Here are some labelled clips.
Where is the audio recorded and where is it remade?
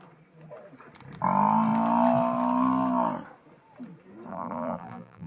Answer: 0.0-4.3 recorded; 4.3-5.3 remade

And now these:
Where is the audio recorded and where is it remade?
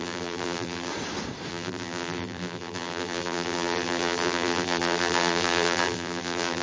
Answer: 0.0-0.9 remade; 0.9-1.5 recorded; 1.5-6.6 remade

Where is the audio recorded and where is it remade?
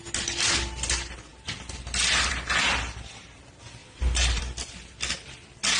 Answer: 0.0-3.8 recorded; 3.8-4.4 remade; 4.4-5.8 recorded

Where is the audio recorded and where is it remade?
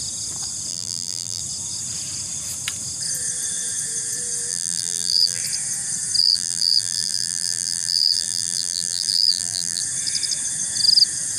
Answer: 0.0-0.7 recorded; 0.7-1.4 remade; 1.4-4.5 recorded; 4.5-5.4 remade; 5.4-6.2 recorded; 6.2-9.8 remade; 9.8-11.4 recorded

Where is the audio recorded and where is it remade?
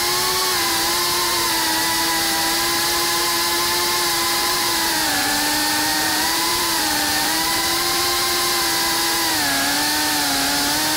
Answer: 0.0-4.4 recorded; 4.4-5.3 remade; 5.3-5.9 recorded; 5.9-8.0 remade; 8.0-11.0 recorded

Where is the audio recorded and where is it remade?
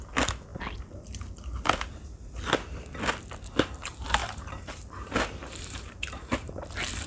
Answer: 0.0-4.2 recorded; 4.2-6.5 remade; 6.5-7.1 recorded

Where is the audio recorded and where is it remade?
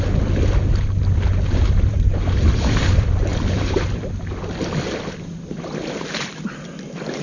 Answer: 0.0-1.9 recorded; 1.9-2.8 remade; 2.8-3.3 recorded; 3.3-4.1 remade; 4.1-7.2 recorded